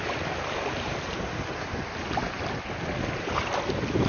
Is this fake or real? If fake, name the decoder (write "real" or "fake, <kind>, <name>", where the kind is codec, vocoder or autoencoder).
real